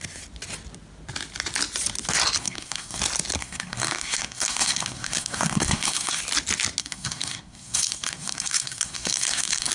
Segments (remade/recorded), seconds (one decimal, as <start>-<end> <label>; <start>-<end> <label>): 0.0-2.4 recorded; 2.4-3.0 remade; 3.0-3.4 recorded; 3.4-6.2 remade; 6.2-6.8 recorded; 6.8-9.7 remade